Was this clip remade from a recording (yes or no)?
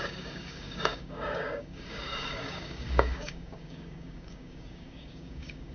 yes